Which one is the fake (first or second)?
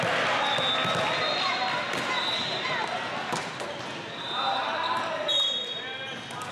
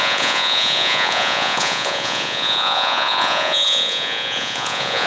second